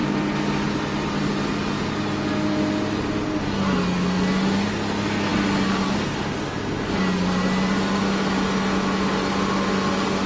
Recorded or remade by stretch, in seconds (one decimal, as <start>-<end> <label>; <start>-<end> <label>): 0.0-10.3 recorded